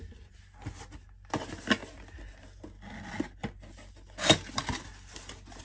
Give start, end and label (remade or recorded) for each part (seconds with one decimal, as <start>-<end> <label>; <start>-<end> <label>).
0.0-5.6 recorded